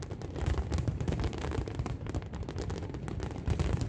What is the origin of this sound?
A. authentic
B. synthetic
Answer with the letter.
A